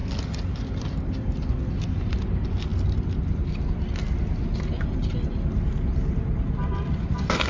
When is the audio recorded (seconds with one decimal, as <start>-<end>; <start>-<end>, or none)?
0.0-7.5